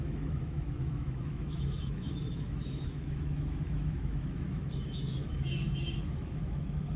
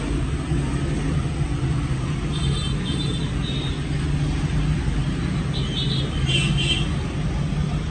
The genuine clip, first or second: second